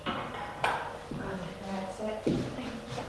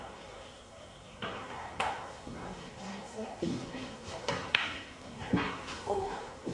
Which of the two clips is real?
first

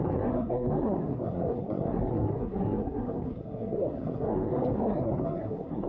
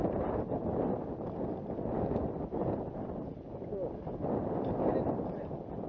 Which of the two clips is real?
second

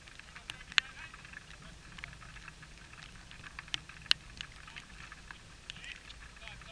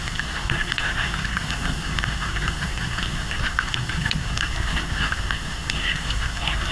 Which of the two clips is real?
first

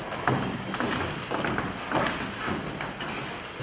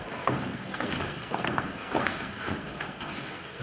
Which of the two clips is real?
first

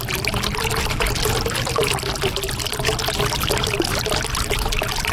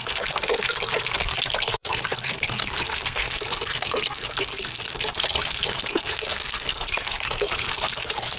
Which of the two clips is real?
first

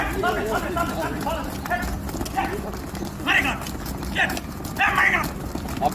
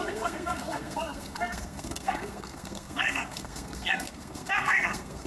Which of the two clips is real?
first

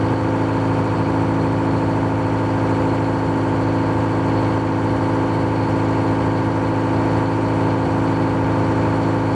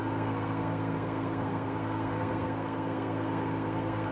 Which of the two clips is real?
first